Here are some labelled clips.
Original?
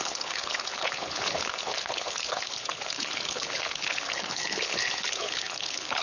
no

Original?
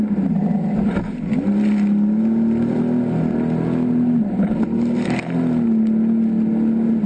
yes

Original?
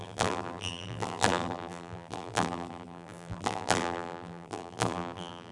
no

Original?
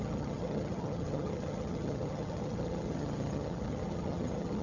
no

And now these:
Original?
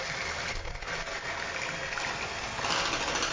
yes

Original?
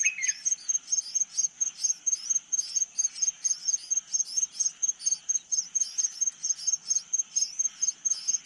yes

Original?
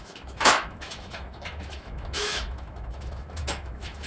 no